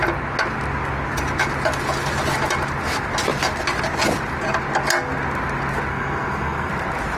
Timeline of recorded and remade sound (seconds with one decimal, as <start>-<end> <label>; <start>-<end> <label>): 0.0-5.9 recorded; 5.9-6.7 remade; 6.7-7.2 recorded